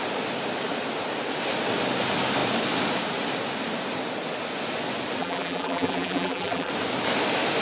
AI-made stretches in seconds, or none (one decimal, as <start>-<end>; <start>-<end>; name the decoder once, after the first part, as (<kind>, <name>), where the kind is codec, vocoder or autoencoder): 5.2-6.7 (vocoder, BigVGAN v2)

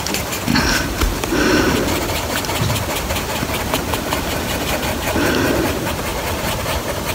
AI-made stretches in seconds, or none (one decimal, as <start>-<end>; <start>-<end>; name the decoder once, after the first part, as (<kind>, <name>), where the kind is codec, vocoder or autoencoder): 0.5-4.8 (vocoder, BigVGAN v2); 6.1-7.1

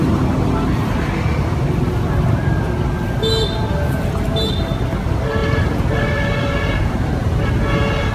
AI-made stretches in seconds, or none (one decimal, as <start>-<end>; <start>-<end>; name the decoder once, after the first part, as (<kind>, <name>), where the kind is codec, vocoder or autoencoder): 5.4-7.5 (vocoder, BigVGAN v2)

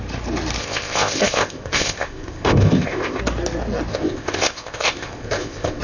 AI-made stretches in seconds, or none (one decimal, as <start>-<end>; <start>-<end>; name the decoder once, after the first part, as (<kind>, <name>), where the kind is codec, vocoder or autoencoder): 0.6-3.2 (codec, ZipCodec); 3.9-5.8

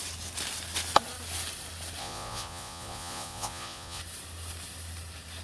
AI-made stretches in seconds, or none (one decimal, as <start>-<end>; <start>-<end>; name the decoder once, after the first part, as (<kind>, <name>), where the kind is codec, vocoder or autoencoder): 2.0-4.0 (vocoder, Vocos)